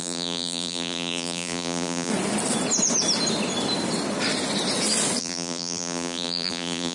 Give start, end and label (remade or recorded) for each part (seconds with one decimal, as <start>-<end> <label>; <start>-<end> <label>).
0.0-2.1 remade; 2.1-5.2 recorded; 5.2-6.9 remade